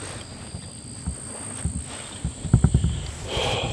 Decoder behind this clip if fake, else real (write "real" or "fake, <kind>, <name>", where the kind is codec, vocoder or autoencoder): real